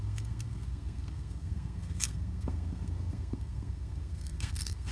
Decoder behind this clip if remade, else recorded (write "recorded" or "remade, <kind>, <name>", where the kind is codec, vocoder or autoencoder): remade, codec, SNAC